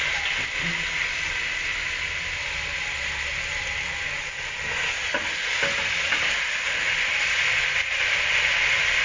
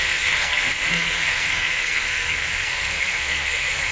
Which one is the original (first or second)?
first